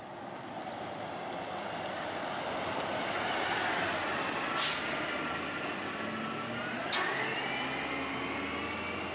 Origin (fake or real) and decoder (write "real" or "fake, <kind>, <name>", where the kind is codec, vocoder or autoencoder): real